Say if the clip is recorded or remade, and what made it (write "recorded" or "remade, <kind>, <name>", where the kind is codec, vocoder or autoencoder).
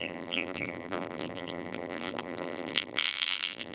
remade, vocoder, BigVGAN v2